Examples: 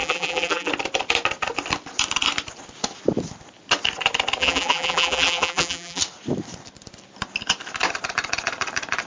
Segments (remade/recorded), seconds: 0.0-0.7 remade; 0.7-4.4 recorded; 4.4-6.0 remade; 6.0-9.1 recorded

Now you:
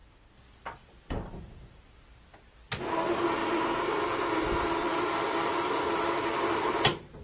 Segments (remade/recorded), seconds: 0.0-2.5 remade; 2.5-3.4 recorded; 3.4-4.0 remade; 4.0-4.9 recorded; 4.9-6.7 remade; 6.7-7.2 recorded

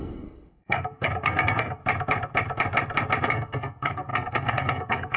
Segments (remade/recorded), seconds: 0.0-1.8 remade; 1.8-3.2 recorded; 3.2-5.2 remade

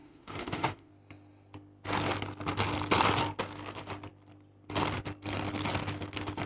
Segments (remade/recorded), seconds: 0.0-0.9 remade; 0.9-6.5 recorded

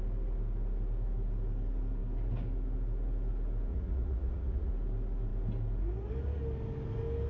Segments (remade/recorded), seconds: 0.0-3.7 recorded; 3.7-4.7 remade; 4.7-7.3 recorded

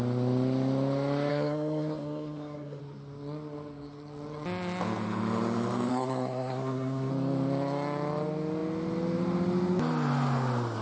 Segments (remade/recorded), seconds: 0.0-1.3 recorded; 1.3-2.8 remade; 2.8-5.9 recorded; 5.9-7.1 remade; 7.1-10.8 recorded